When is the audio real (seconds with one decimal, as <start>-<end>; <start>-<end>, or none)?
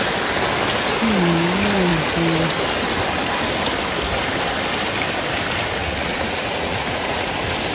0.0-5.8; 7.3-7.7